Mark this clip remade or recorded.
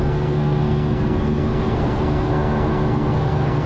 remade